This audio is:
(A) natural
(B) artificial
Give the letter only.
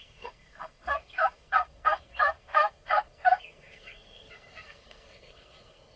B